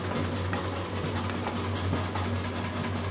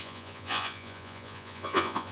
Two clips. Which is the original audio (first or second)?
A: first